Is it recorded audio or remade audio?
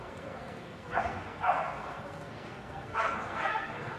remade